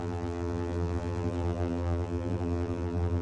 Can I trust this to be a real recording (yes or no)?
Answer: no